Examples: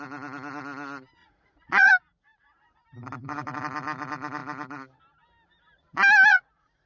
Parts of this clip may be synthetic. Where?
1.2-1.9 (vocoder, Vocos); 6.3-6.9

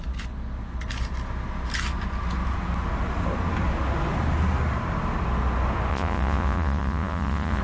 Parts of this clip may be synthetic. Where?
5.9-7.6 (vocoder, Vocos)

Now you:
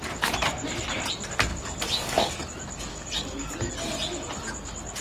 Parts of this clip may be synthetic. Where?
1.5-2.4 (codec, DAC); 2.9-3.7

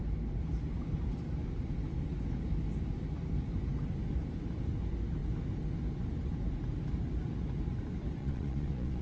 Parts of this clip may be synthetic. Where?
8.2-9.0 (vocoder, Vocos)

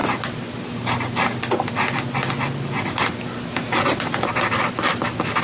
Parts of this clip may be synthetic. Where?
none